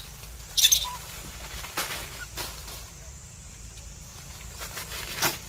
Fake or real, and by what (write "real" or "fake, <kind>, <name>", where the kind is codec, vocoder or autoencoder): real